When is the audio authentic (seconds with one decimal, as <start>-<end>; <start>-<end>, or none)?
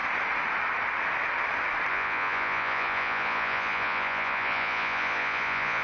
0.0-1.9